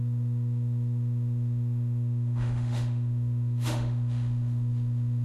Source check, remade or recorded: remade